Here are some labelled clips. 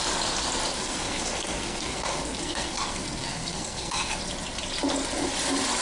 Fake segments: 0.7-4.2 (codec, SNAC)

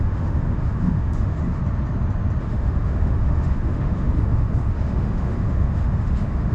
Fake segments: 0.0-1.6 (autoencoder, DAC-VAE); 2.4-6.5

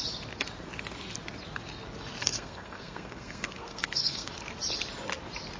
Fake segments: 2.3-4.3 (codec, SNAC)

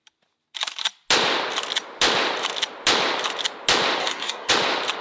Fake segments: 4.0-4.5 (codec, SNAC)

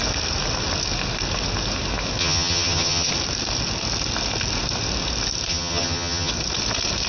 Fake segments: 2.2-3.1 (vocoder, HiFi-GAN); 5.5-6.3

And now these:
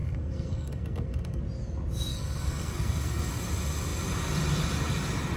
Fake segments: 0.0-1.4 (codec, SNAC); 2.1-3.3

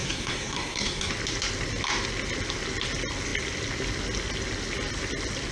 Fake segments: 0.0-1.1 (codec, SNAC)

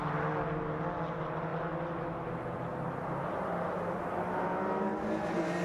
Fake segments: none